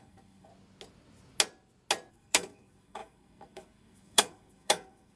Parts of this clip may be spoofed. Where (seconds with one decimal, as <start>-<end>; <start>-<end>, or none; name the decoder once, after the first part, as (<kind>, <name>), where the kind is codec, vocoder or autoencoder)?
0.0-0.5 (codec, SNAC); 2.1-5.2